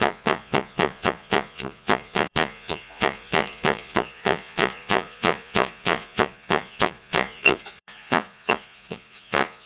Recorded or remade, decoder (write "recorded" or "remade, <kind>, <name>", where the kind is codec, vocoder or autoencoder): remade, vocoder, Vocos